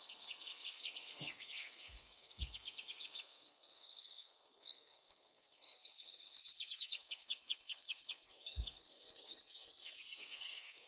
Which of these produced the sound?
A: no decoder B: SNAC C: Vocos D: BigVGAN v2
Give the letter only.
B